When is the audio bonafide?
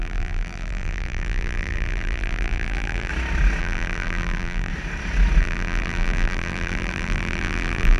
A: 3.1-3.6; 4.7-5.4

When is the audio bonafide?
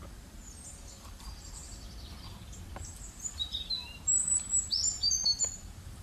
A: 1.6-2.8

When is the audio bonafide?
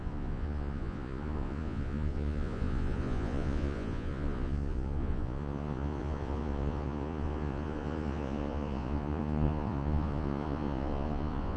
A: none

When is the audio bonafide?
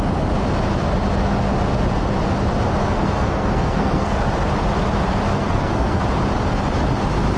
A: 0.0-2.8; 4.2-5.3; 6.0-7.4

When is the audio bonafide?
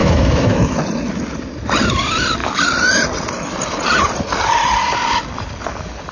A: 0.8-6.1